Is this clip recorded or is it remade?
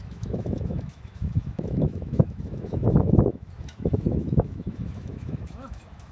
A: remade